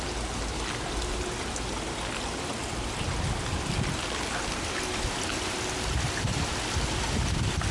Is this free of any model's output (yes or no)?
yes